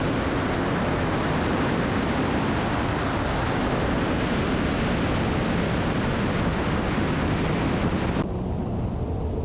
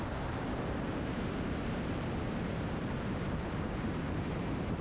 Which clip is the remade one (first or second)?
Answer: second